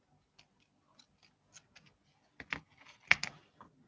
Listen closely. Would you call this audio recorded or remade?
recorded